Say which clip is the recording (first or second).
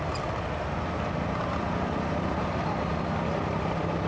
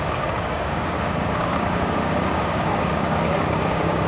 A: first